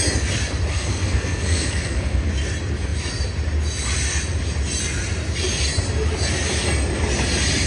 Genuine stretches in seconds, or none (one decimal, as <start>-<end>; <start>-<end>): 0.0-0.7; 2.3-7.7